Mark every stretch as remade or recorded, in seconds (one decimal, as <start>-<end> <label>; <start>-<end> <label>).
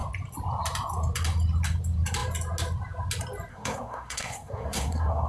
0.0-3.5 recorded; 3.5-5.3 remade